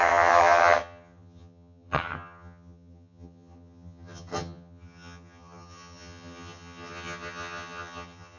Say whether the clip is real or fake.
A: fake